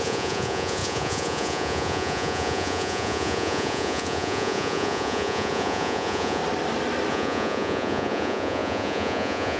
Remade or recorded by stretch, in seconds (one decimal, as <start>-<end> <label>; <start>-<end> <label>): 0.0-6.4 remade; 6.4-7.1 recorded; 7.1-9.6 remade

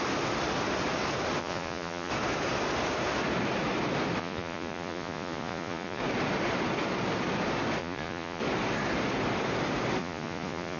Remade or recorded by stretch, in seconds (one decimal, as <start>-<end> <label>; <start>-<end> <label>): 0.0-1.4 recorded; 1.4-2.1 remade; 2.1-4.2 recorded; 4.2-6.0 remade; 6.0-7.8 recorded; 7.8-8.4 remade; 8.4-10.0 recorded; 10.0-10.8 remade

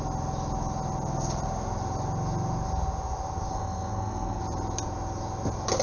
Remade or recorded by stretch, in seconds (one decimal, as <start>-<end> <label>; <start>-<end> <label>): 0.0-3.5 recorded; 3.5-4.4 remade; 4.4-5.8 recorded

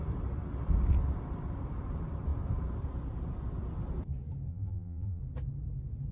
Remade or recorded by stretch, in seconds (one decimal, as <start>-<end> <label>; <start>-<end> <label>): 0.0-4.5 recorded; 4.5-5.2 remade; 5.2-6.1 recorded